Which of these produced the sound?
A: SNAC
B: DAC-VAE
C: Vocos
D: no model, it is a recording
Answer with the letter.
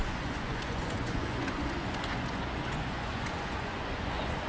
C